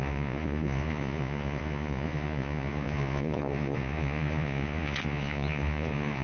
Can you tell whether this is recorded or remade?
remade